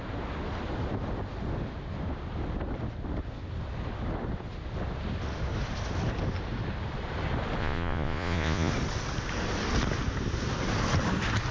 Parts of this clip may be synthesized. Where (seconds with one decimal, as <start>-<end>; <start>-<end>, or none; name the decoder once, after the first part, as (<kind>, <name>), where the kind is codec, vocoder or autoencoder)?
7.6-8.7 (vocoder, Vocos)